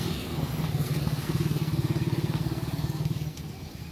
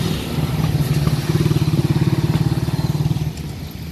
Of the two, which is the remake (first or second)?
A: first